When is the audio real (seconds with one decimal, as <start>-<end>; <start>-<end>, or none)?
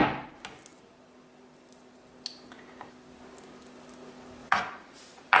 0.0-4.4